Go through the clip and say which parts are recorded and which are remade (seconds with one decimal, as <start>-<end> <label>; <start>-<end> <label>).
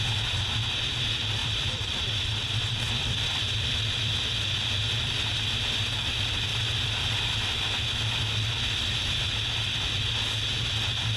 0.0-1.4 recorded; 1.4-6.1 remade; 6.1-11.2 recorded